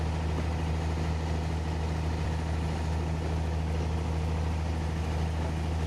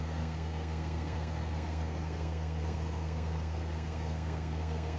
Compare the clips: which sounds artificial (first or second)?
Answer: second